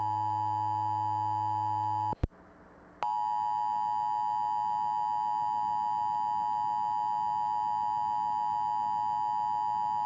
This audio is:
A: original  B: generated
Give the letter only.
A